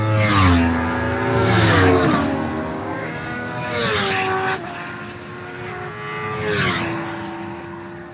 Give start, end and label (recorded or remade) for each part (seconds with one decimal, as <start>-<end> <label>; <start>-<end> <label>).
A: 0.0-1.3 recorded; 1.3-1.9 remade; 1.9-2.7 recorded; 2.7-3.8 remade; 3.8-8.1 recorded